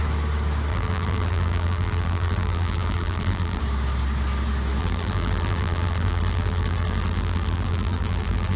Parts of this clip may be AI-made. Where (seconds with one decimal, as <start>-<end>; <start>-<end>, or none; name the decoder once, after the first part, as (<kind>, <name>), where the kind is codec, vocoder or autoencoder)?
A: 0.7-3.6 (vocoder, BigVGAN v2); 4.8-8.6